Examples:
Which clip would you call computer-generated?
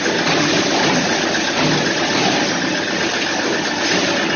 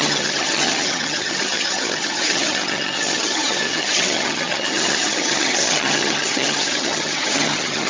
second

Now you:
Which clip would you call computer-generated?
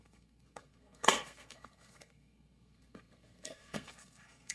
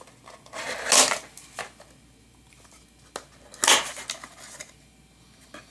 first